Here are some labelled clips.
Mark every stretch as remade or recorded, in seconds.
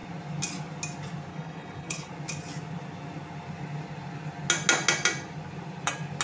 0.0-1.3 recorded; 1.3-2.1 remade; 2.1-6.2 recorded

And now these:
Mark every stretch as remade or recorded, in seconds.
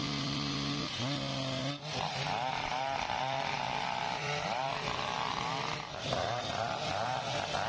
0.0-7.7 recorded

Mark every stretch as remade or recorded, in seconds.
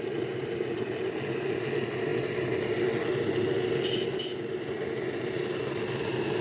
0.0-6.4 recorded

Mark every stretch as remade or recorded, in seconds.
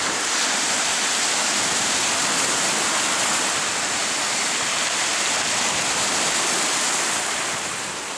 0.0-8.2 recorded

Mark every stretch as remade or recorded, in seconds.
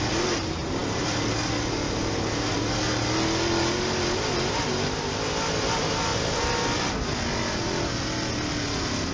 0.0-0.8 recorded; 0.8-1.4 remade; 1.4-6.1 recorded; 6.1-7.2 remade; 7.2-9.1 recorded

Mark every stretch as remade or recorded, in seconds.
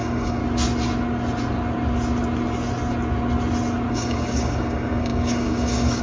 0.0-0.4 remade; 0.4-3.9 recorded; 3.9-6.0 remade